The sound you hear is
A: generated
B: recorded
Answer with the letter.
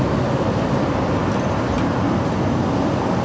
B